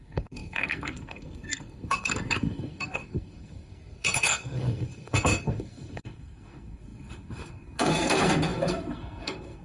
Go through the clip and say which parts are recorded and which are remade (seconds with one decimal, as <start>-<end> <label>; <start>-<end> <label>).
0.0-9.6 remade